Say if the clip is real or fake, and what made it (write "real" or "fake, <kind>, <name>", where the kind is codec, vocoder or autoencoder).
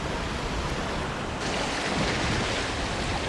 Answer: real